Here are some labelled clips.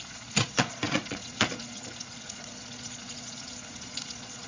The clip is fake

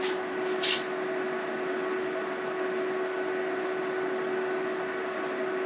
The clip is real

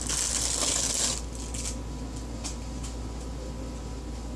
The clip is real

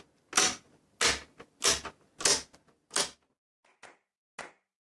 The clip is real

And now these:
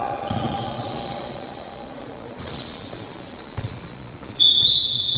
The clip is fake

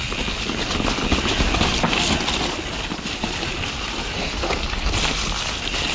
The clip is real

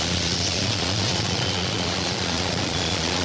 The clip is fake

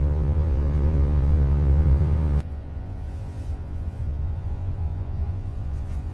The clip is fake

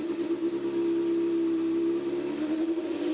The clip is real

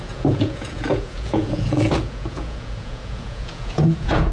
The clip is fake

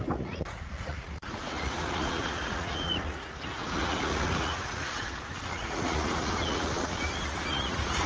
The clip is fake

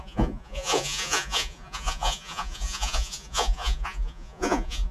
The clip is fake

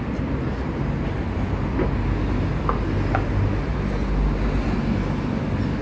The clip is real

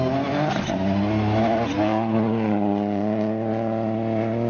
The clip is real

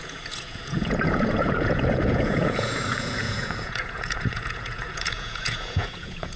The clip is fake